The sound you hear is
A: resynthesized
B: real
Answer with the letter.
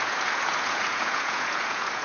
A